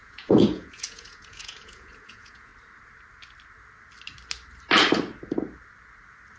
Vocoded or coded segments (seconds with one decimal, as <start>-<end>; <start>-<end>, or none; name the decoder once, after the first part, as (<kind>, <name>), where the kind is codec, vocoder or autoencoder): 0.0-2.5 (vocoder, Vocos)